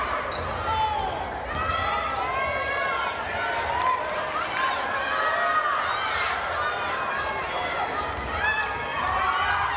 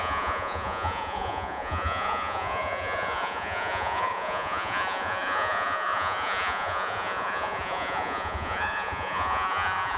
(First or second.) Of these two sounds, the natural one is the first